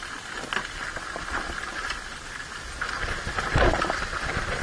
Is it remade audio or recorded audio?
recorded